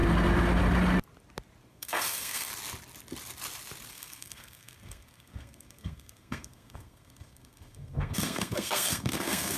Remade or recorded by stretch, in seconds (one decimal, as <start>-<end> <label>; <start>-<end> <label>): 0.0-1.7 recorded; 1.7-2.5 remade; 2.5-3.9 recorded; 3.9-9.6 remade